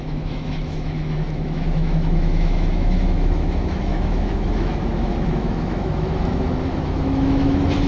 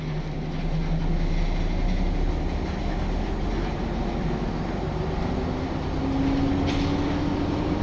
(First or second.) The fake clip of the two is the first